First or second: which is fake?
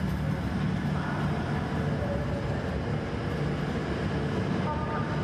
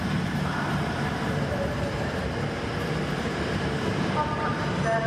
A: second